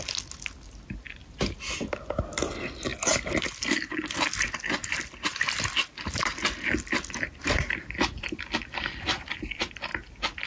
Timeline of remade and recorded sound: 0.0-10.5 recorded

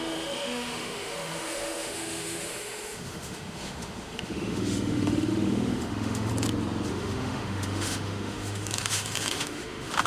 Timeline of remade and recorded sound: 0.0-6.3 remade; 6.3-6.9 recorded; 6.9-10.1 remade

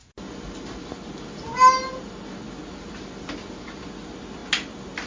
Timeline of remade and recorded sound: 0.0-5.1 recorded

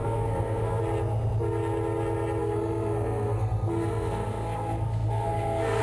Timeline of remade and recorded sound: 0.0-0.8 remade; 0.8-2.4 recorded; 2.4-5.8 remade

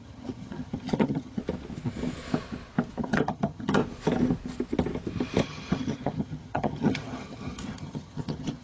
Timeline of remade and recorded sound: 0.0-1.4 remade; 1.4-3.0 recorded; 3.0-3.8 remade; 3.8-5.4 recorded; 5.4-8.6 remade

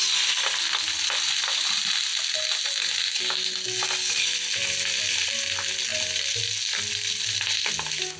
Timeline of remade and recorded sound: 0.0-5.9 recorded; 5.9-6.4 remade; 6.4-8.2 recorded